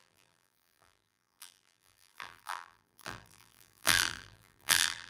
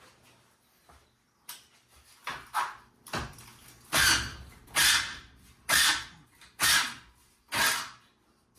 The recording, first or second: second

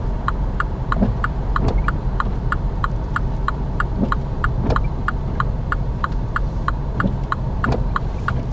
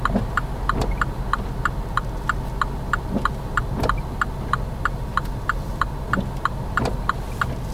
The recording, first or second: second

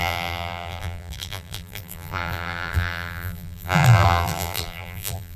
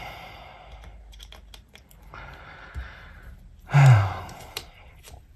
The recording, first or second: second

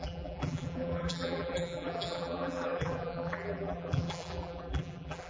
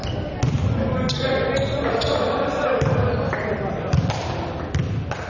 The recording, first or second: second